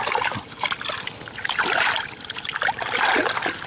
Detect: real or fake real